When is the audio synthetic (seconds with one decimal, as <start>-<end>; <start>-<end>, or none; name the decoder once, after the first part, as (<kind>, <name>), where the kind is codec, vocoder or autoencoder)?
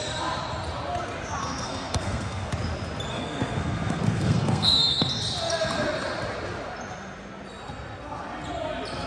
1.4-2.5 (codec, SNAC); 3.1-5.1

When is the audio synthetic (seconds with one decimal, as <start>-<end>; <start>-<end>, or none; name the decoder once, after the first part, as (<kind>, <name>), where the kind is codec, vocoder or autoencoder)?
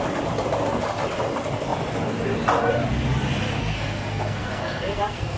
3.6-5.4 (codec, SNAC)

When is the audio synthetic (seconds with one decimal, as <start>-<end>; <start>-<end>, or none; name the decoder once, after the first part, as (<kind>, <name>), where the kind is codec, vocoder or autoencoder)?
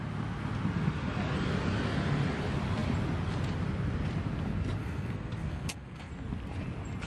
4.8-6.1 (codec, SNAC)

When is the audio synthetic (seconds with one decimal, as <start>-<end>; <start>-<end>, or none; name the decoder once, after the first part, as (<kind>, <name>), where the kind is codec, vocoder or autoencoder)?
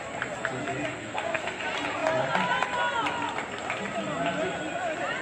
0.9-1.6 (codec, SNAC)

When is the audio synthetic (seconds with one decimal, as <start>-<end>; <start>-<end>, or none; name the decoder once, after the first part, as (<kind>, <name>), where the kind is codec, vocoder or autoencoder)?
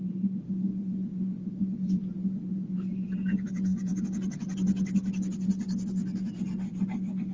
none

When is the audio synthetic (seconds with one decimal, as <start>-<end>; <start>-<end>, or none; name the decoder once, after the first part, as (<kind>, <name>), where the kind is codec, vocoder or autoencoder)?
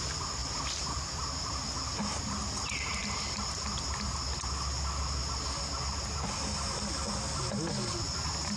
none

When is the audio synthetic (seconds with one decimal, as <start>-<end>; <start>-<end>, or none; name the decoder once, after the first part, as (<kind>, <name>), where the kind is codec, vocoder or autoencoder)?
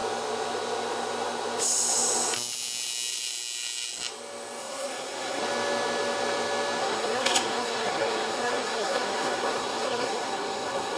4.6-5.4 (codec, SNAC); 6.8-11.0